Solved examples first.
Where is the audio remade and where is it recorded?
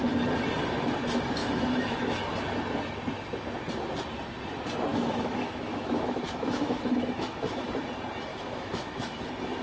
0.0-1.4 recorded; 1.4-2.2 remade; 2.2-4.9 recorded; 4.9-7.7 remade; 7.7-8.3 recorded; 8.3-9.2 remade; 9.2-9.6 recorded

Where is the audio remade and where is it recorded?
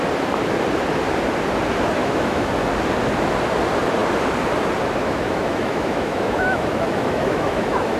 0.0-2.0 recorded; 2.0-2.5 remade; 2.5-5.0 recorded; 5.0-8.0 remade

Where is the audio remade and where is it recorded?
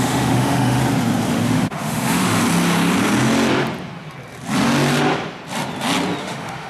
0.0-0.8 remade; 0.8-1.3 recorded; 1.3-2.4 remade; 2.4-6.2 recorded; 6.2-6.7 remade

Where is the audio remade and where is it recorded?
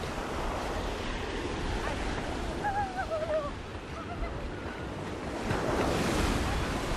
0.0-7.0 recorded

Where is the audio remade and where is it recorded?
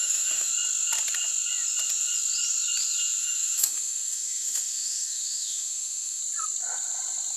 0.0-0.5 remade; 0.5-3.2 recorded; 3.2-6.2 remade; 6.2-7.4 recorded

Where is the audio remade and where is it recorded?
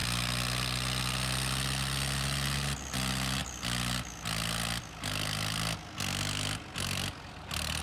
0.0-7.8 recorded